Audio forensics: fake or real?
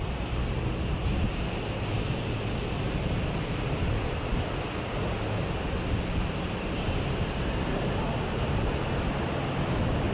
real